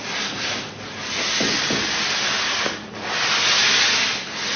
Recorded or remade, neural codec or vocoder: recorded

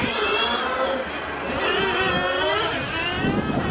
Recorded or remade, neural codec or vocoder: recorded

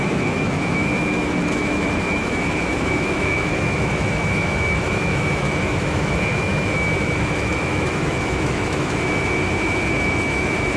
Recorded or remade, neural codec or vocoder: remade, autoencoder, DAC-VAE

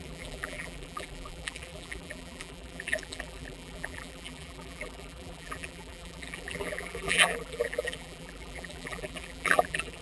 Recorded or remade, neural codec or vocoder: remade, vocoder, BigVGAN v2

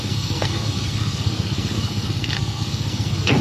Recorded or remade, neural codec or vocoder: remade, codec, SNAC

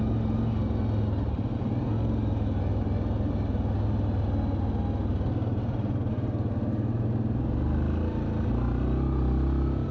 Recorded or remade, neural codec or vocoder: recorded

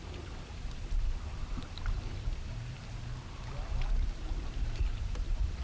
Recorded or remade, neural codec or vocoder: recorded